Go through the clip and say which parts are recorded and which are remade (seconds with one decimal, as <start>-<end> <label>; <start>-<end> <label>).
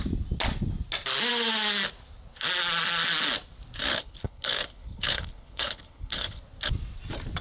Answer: 0.0-3.9 recorded; 3.9-6.4 remade; 6.4-7.4 recorded